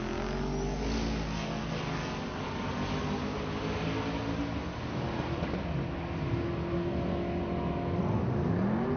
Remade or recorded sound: recorded